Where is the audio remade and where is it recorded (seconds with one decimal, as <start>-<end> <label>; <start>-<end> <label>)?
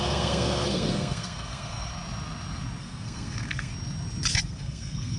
0.0-1.9 remade; 1.9-2.8 recorded; 2.8-3.7 remade; 3.7-4.4 recorded; 4.4-5.2 remade